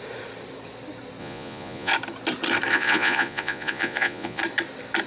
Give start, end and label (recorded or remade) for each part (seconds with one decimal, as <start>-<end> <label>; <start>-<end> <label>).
0.0-1.2 recorded; 1.2-1.9 remade; 1.9-2.7 recorded; 2.7-4.4 remade; 4.4-5.1 recorded